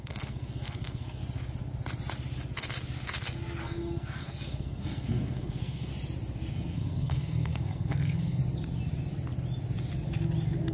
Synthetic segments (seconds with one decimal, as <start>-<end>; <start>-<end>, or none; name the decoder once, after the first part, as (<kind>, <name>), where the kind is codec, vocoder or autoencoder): 0.0-1.2 (codec, SNAC); 3.6-5.9; 6.5-8.4